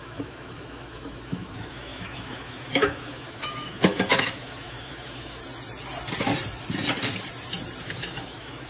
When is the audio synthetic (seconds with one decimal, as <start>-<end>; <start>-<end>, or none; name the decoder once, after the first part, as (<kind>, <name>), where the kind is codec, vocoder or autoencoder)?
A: 0.0-5.4 (autoencoder, DAC-VAE); 7.8-8.7